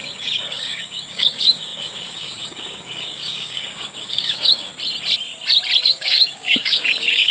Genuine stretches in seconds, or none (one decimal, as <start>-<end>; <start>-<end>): 4.7-5.8